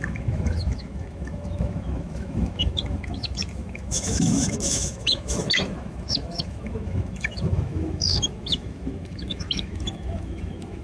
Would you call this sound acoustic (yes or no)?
no